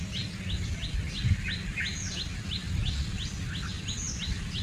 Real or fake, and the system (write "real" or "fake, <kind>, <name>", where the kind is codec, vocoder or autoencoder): real